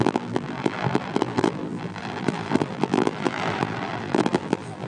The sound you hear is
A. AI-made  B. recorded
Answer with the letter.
A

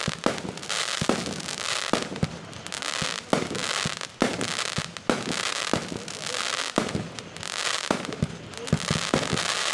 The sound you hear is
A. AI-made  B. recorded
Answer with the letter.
B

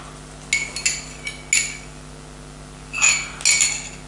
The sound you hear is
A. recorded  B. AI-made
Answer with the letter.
A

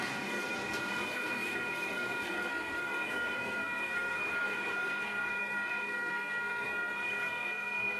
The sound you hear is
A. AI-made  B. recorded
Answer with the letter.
A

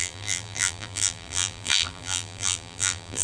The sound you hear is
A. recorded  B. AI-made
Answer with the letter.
B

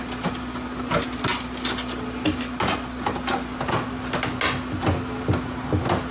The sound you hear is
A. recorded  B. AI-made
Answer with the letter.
A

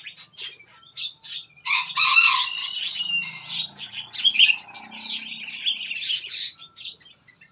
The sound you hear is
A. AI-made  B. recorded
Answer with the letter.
B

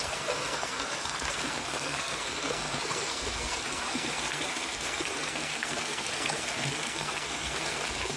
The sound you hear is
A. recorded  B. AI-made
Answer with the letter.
B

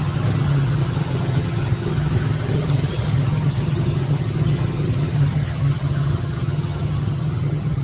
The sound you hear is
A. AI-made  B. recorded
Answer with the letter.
A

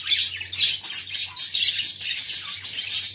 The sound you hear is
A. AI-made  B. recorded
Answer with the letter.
B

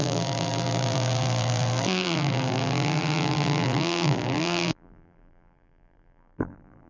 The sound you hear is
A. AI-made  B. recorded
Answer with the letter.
A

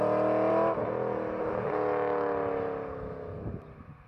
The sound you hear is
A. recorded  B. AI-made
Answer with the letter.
A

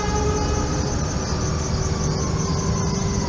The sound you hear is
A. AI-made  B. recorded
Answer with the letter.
B